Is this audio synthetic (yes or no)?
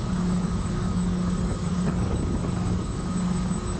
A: yes